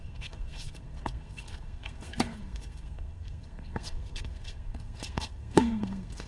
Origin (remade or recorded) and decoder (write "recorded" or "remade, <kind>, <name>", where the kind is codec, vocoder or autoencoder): remade, codec, SNAC